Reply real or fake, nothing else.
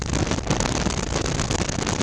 real